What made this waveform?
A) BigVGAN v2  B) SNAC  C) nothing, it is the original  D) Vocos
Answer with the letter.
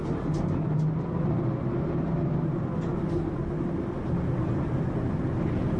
C